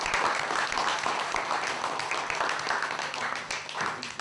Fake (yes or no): no